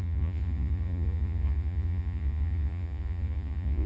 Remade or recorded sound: remade